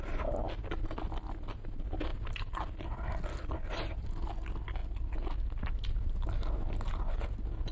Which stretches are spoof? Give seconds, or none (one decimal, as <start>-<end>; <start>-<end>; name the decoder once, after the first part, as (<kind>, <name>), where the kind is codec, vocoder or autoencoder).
none